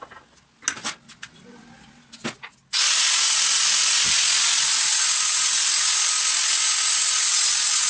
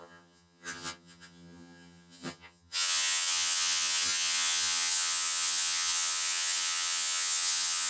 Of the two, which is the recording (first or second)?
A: first